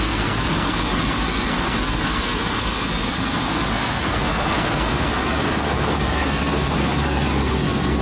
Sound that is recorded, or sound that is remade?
remade